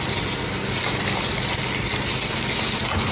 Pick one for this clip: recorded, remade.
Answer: recorded